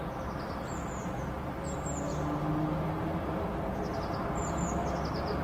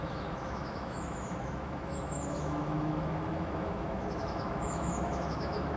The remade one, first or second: second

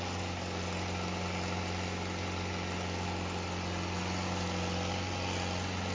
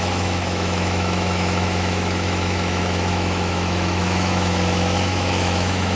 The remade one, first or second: second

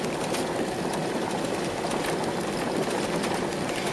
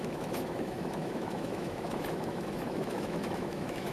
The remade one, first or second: second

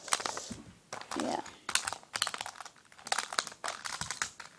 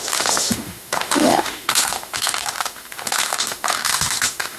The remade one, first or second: second